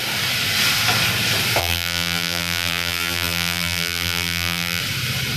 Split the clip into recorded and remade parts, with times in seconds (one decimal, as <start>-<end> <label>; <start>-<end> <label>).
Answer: 0.0-1.6 recorded; 1.6-4.8 remade; 4.8-5.4 recorded